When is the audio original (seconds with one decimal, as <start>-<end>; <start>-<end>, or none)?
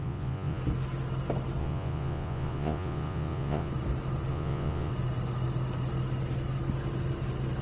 0.6-1.6; 3.7-4.3; 4.9-7.6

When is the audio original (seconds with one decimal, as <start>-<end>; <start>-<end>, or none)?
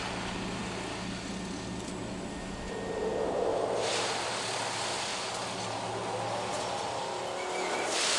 0.0-3.5; 4.3-5.1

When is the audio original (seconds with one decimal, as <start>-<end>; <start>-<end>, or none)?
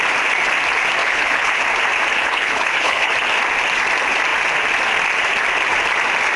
0.0-1.0; 1.6-2.1; 3.1-6.4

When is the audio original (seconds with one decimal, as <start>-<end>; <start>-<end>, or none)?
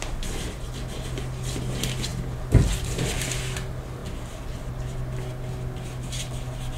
0.0-6.8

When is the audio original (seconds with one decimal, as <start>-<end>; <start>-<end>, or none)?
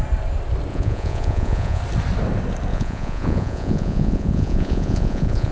0.0-0.7; 1.8-2.7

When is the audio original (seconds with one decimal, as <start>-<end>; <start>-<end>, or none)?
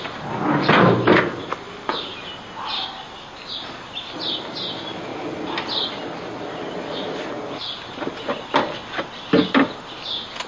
0.0-10.5